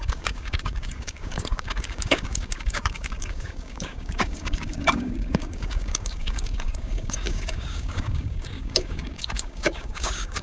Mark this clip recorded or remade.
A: remade